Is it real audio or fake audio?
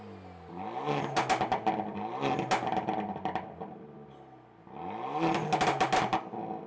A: real